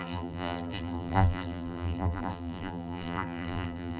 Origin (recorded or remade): remade